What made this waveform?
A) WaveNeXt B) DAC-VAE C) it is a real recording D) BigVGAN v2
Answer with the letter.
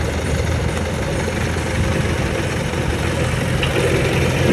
C